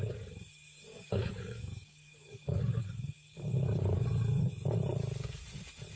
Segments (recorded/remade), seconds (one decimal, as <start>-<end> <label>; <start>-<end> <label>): 0.0-0.9 recorded; 0.9-2.8 remade; 2.8-6.0 recorded